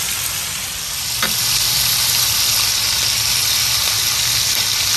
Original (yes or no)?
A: yes